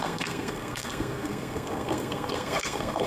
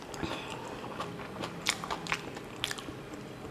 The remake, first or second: first